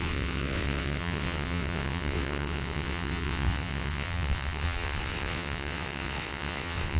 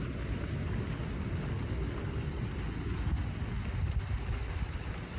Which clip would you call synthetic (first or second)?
first